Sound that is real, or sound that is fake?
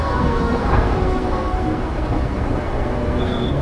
fake